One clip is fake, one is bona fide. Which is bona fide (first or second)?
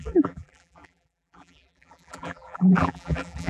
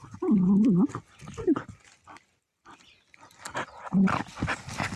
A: second